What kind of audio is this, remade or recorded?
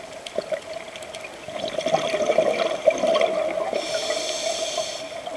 recorded